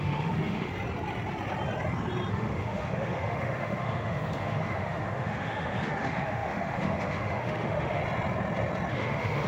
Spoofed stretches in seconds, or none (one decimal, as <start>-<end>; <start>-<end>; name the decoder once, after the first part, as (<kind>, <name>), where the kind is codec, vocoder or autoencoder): 0.0-0.7 (autoencoder, DAC-VAE); 2.3-8.0; 8.9-9.5